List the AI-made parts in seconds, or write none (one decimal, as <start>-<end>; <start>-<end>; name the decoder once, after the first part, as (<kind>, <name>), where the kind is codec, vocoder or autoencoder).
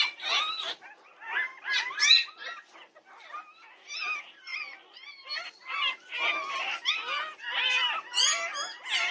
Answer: none